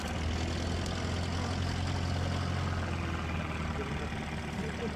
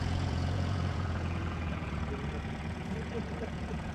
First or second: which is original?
first